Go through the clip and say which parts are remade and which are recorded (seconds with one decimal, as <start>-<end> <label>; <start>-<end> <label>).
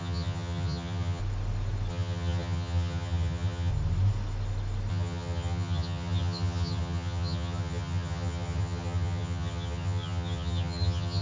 0.0-1.2 remade; 1.2-1.9 recorded; 1.9-3.7 remade; 3.7-4.9 recorded; 4.9-11.2 remade